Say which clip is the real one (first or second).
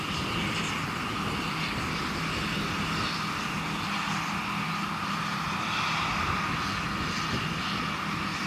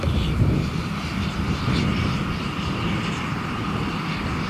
first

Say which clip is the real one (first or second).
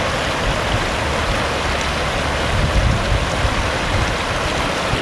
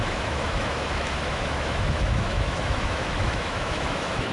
first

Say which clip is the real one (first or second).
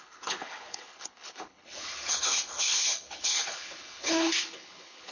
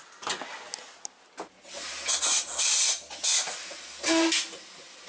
second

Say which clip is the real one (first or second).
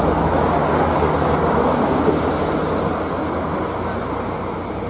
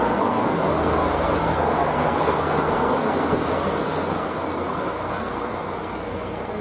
first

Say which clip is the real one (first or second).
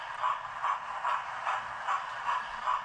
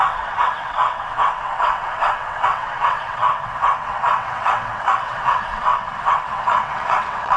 first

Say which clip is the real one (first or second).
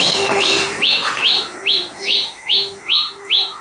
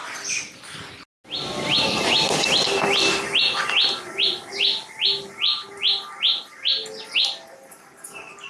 second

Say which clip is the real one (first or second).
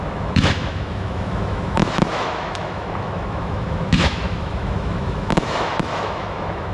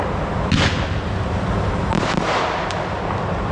second